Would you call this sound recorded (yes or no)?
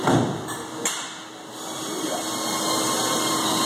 yes